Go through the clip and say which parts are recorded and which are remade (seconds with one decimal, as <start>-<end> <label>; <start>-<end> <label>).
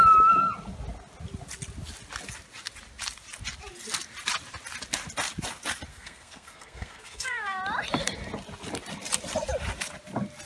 0.0-5.9 recorded; 5.9-7.6 remade; 7.6-10.5 recorded